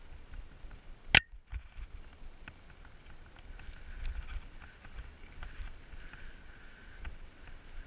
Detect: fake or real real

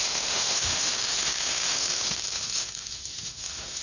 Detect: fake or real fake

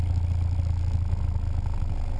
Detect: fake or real real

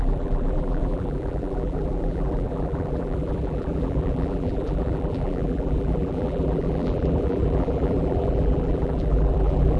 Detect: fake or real fake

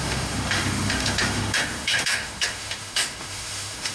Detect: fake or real fake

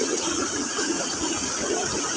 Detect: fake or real fake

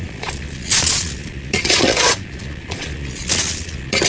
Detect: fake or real fake